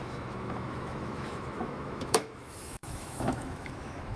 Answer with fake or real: fake